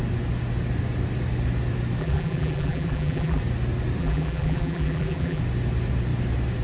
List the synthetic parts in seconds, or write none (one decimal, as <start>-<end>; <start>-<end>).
2.0-3.4; 4.0-5.4